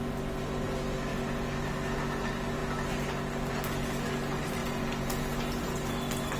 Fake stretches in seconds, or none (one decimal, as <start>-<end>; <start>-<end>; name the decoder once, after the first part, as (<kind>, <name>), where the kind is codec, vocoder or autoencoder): 4.6-5.2 (vocoder, Vocos)